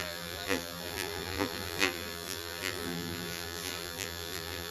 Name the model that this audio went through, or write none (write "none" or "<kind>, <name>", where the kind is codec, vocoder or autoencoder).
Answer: vocoder, BigVGAN v2